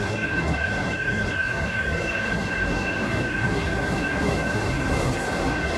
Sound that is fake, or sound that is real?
fake